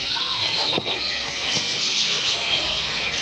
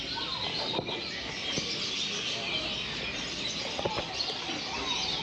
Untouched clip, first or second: second